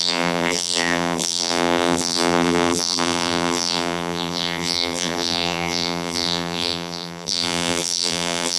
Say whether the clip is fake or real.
fake